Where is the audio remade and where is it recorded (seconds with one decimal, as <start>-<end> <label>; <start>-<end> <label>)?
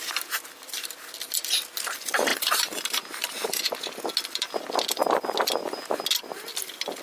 0.0-2.3 recorded; 2.3-3.6 remade; 3.6-7.0 recorded